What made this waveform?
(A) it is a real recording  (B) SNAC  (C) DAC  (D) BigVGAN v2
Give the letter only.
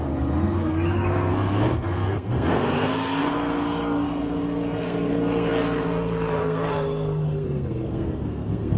B